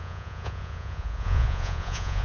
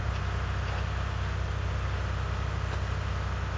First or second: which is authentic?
second